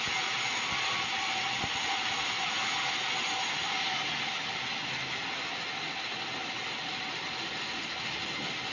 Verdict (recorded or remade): recorded